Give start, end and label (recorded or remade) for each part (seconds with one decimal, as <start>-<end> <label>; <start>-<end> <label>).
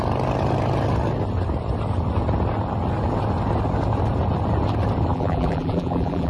0.0-5.1 recorded; 5.1-6.3 remade